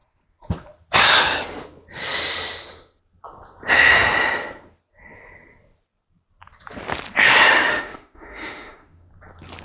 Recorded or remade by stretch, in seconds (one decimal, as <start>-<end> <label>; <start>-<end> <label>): 0.0-7.7 recorded; 7.7-9.1 remade; 9.1-9.6 recorded